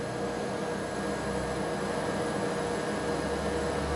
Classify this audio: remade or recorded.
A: recorded